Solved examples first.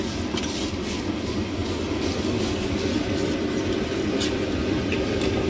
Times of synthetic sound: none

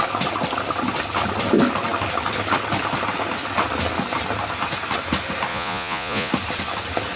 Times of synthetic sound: 5.5-6.3

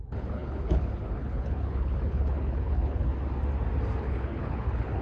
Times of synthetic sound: 0.0-3.1; 4.0-5.0

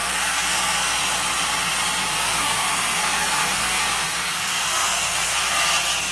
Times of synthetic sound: 0.0-1.0; 2.1-5.5

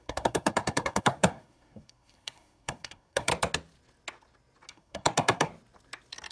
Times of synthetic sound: 0.0-3.3; 4.7-5.5

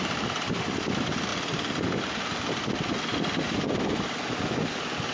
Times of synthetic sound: none

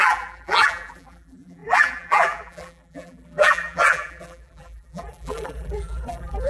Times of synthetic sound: 0.0-6.5

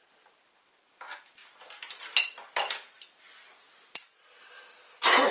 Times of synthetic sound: none